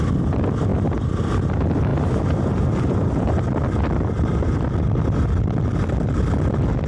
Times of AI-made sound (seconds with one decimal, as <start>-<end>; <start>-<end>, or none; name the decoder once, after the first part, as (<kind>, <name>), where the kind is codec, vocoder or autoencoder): none

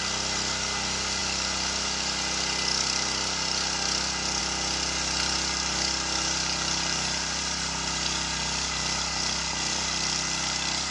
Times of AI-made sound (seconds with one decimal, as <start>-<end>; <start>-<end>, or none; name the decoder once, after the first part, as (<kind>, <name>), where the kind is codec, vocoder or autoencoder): none